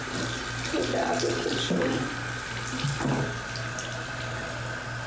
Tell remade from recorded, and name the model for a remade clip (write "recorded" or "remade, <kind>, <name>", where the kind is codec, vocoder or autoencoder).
recorded